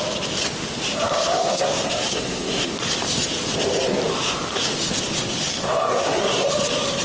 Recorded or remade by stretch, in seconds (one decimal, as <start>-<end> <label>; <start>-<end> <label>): 0.0-1.5 recorded; 1.5-2.7 remade; 2.7-5.5 recorded; 5.5-6.5 remade; 6.5-7.0 recorded